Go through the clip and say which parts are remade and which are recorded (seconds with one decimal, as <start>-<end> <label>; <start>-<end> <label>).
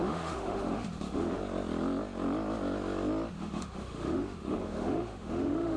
0.0-1.4 remade; 1.4-3.3 recorded; 3.3-5.8 remade